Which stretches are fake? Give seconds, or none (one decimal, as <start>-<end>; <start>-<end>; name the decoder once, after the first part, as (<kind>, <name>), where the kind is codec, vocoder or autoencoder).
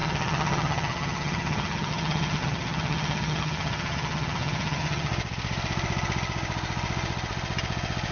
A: 0.0-5.1 (vocoder, HiFi-GAN)